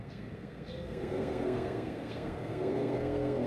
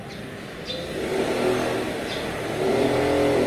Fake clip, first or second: first